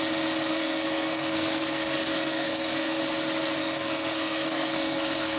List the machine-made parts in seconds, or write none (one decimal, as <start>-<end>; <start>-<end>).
0.5-3.0; 3.6-5.4

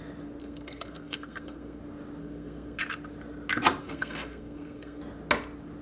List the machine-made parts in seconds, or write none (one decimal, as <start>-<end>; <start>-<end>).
0.4-1.8; 2.2-2.8; 3.8-5.0

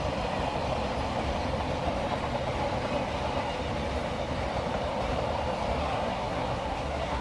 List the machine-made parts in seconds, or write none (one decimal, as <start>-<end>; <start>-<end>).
5.8-7.2

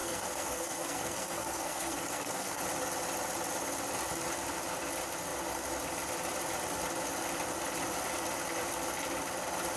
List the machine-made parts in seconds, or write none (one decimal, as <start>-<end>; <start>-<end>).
0.0-2.6